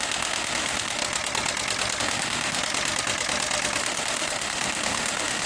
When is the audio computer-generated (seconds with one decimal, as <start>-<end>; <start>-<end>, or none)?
0.0-1.0; 2.0-2.6; 3.8-5.5